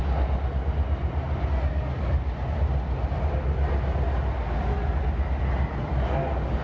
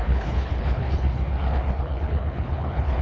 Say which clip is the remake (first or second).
second